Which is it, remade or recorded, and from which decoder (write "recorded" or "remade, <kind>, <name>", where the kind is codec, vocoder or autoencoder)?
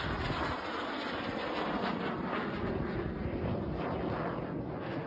recorded